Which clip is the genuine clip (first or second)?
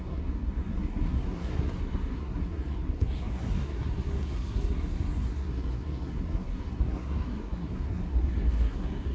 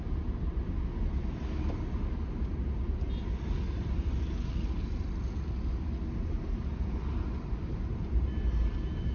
second